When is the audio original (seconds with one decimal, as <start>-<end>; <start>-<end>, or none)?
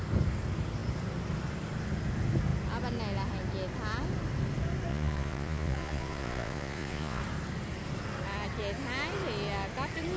0.0-4.9; 7.2-10.2